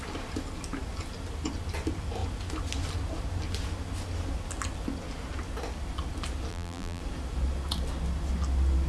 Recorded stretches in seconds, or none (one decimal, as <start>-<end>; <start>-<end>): 0.0-6.5; 7.0-8.9